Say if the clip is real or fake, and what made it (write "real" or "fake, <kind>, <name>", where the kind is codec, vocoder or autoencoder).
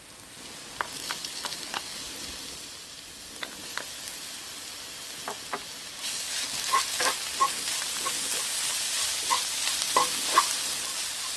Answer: real